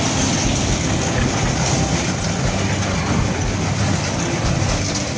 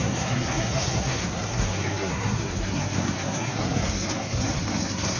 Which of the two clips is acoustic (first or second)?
first